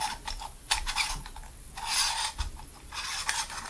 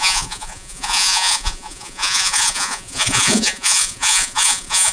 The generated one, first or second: second